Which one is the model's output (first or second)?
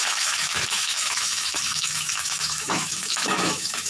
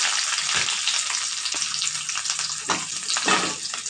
first